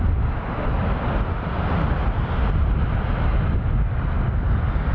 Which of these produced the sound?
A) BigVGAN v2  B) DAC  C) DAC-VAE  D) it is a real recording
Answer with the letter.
D